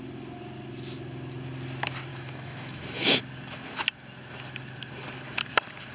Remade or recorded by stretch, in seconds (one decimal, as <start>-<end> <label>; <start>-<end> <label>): 0.0-2.1 recorded; 2.1-3.2 remade; 3.2-5.9 recorded